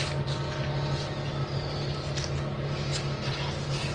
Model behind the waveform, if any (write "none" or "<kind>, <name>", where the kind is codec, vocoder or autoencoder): none